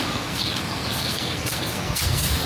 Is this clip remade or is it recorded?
remade